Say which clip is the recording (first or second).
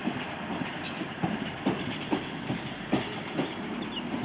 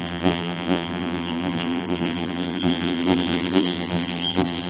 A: first